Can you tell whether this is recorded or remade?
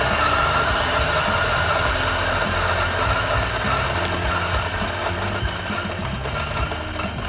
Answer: recorded